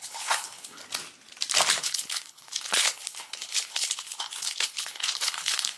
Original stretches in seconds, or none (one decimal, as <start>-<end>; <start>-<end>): 0.8-1.8